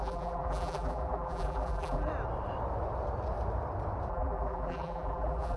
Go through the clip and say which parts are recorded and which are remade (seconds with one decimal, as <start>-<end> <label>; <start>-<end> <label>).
0.0-2.1 remade; 2.1-4.1 recorded; 4.1-5.6 remade